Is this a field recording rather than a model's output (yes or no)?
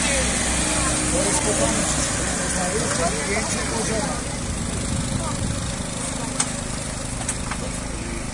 yes